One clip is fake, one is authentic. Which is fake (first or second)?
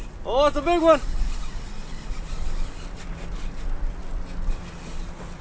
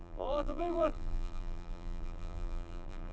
second